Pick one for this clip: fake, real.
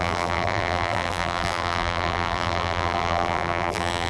fake